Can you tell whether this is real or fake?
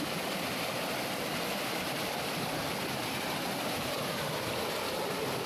real